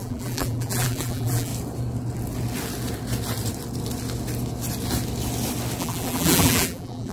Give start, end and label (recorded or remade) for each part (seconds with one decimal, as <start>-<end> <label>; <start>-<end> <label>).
0.0-1.5 remade; 1.5-5.8 recorded; 5.8-7.1 remade